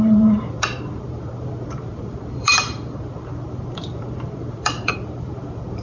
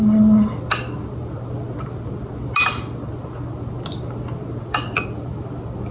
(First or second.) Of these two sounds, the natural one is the second